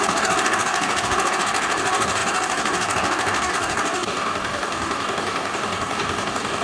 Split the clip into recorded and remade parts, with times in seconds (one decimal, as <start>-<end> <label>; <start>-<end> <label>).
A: 0.0-6.6 remade